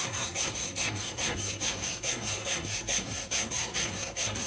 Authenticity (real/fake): fake